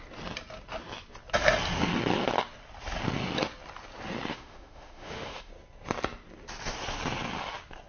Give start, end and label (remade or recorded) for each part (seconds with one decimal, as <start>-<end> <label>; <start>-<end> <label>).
0.0-4.3 recorded; 4.3-5.5 remade; 5.5-7.9 recorded